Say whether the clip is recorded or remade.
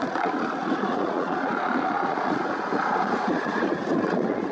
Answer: remade